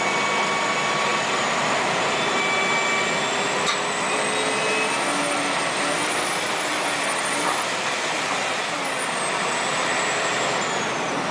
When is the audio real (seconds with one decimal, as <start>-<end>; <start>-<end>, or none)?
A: 0.0-11.3